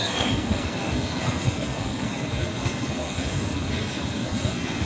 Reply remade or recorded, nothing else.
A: remade